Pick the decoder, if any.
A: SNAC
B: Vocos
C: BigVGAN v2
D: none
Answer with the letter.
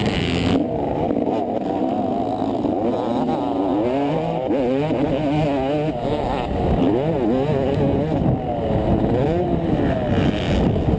D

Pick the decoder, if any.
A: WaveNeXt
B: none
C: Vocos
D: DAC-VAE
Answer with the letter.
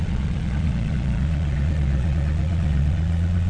C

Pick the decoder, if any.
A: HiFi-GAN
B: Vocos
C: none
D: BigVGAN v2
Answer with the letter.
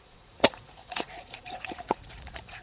B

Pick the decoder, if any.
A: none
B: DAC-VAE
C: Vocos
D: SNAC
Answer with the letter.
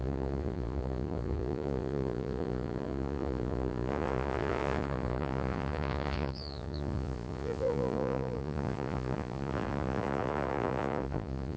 C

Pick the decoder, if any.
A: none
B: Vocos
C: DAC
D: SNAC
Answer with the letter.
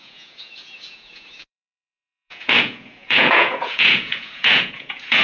B